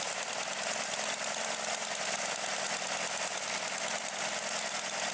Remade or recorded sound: recorded